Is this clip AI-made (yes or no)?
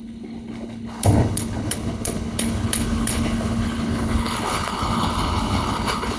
yes